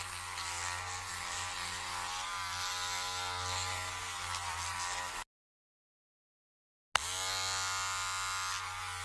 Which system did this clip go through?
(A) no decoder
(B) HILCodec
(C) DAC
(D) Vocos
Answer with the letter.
A